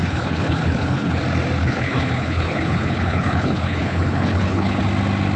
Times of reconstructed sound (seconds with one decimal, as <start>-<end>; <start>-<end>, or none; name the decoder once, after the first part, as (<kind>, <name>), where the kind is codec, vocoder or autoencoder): 0.0-1.2 (codec, HILCodec); 1.6-4.8